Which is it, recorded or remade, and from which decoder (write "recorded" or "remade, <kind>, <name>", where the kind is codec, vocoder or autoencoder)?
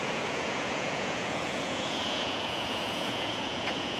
remade, vocoder, Vocos